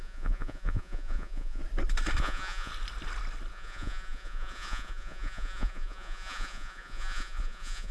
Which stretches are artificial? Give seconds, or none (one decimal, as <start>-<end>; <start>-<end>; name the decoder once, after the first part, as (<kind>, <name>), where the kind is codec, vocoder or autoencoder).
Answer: 0.0-1.6 (vocoder, Vocos); 2.2-2.7; 3.5-7.9